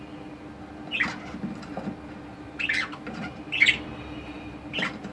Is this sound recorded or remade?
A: recorded